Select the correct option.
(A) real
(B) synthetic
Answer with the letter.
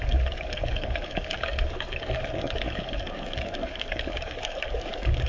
B